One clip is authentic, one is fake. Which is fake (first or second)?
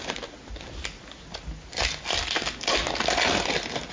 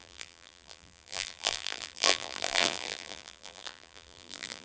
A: second